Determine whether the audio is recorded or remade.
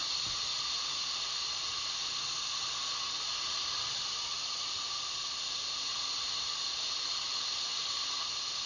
recorded